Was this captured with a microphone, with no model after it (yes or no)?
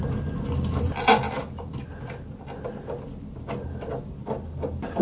yes